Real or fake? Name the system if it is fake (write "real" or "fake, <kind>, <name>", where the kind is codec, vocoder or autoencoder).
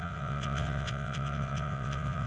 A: fake, vocoder, WaveNeXt